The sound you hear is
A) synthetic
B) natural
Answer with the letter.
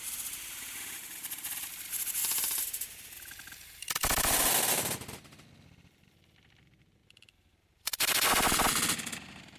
A